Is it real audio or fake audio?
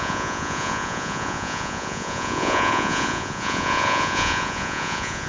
fake